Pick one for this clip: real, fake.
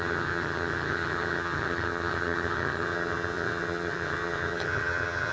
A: fake